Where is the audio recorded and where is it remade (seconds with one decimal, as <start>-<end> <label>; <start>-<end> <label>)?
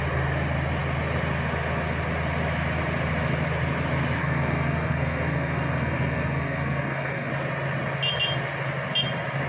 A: 0.0-4.2 recorded; 4.2-7.3 remade; 7.3-9.5 recorded